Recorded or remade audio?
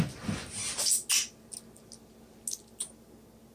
recorded